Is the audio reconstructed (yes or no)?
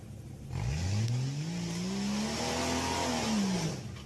no